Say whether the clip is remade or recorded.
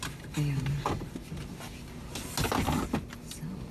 recorded